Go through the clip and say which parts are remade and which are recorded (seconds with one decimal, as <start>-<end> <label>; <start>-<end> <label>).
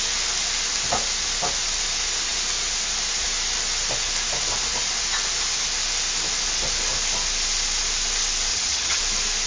0.0-8.5 recorded; 8.5-9.0 remade; 9.0-9.5 recorded